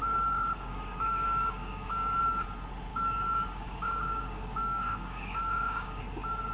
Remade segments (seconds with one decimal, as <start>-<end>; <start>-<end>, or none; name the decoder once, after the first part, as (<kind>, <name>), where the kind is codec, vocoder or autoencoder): 0.0-2.2 (codec, DAC); 2.9-6.0

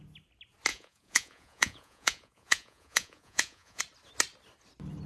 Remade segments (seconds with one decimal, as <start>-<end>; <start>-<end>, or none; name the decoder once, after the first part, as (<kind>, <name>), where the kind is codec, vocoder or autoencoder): 0.7-3.8 (vocoder, Vocos)

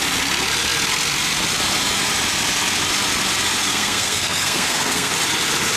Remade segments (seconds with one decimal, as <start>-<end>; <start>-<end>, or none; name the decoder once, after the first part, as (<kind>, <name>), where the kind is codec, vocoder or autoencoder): 3.6-5.1 (codec, SNAC)